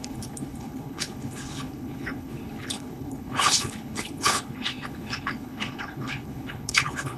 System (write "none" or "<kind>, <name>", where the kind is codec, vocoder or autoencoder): codec, HILCodec